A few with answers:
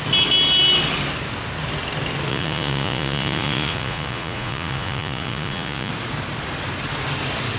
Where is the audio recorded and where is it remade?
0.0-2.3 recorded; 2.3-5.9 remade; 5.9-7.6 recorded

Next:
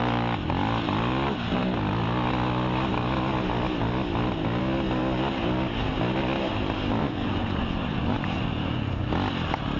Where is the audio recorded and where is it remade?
0.0-7.0 recorded; 7.0-9.1 remade; 9.1-9.8 recorded

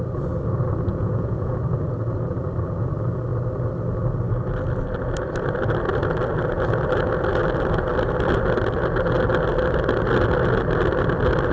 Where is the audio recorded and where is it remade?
0.0-0.9 recorded; 0.9-1.6 remade; 1.6-11.5 recorded

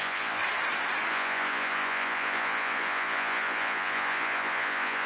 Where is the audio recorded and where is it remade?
0.0-0.4 remade; 0.4-1.1 recorded; 1.1-5.1 remade

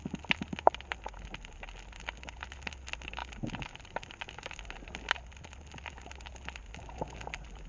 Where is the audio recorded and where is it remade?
0.0-7.7 recorded

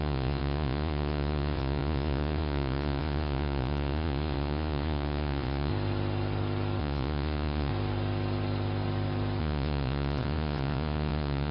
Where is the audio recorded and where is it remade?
0.0-5.7 remade; 5.7-6.8 recorded; 6.8-7.7 remade; 7.7-9.4 recorded; 9.4-11.5 remade

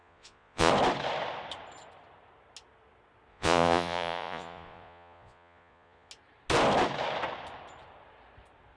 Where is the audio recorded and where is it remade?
0.0-0.7 remade; 0.7-3.3 recorded; 3.3-6.1 remade; 6.1-8.8 recorded